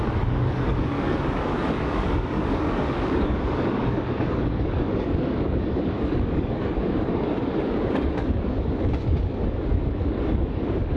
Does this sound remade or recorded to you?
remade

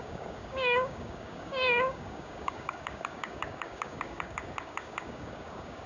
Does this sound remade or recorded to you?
remade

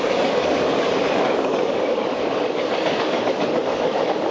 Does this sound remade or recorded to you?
remade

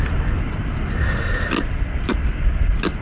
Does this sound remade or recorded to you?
recorded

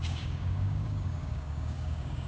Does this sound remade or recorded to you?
remade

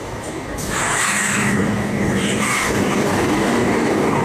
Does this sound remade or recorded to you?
remade